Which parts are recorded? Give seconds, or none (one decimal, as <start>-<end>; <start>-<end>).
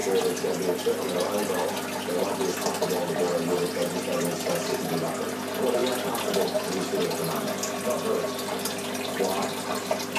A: 0.0-10.2